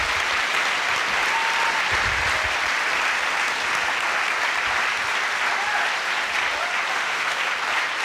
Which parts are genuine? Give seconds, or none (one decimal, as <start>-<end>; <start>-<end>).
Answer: 0.0-6.9; 7.4-8.0